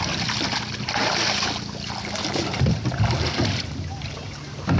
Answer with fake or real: real